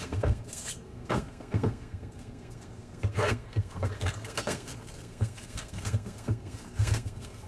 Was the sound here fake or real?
fake